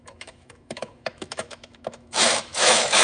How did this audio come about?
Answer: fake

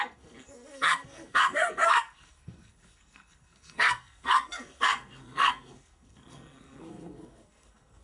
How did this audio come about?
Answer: fake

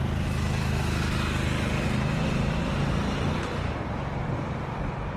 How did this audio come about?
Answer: real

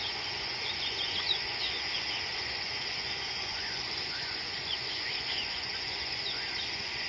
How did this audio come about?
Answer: fake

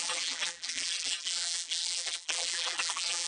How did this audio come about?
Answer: fake